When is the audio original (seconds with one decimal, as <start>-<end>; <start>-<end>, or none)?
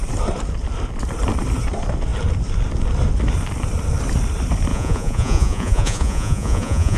0.0-4.7